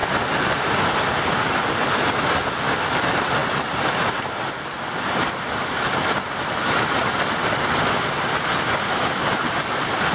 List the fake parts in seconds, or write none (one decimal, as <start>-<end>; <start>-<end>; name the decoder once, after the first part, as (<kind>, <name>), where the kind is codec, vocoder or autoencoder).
none